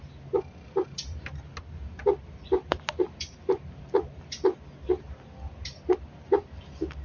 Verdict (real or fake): real